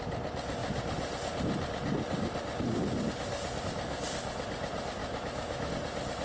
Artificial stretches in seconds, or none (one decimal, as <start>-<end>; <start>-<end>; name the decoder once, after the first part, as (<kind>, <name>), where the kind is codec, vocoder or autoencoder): 5.0-5.7 (autoencoder, DAC-VAE)